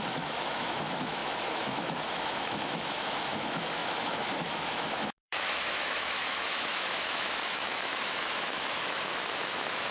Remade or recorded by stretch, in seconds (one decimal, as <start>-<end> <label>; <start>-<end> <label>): 0.0-9.9 remade